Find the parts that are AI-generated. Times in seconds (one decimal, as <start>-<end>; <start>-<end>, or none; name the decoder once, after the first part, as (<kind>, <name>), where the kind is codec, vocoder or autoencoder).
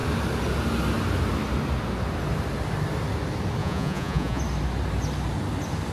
3.6-4.4 (vocoder, Vocos)